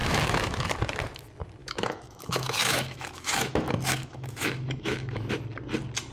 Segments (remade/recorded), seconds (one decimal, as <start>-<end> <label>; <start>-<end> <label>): 0.0-0.7 remade; 0.7-1.6 recorded; 1.6-5.3 remade; 5.3-6.1 recorded